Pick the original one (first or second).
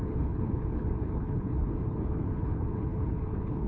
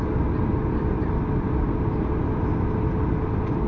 second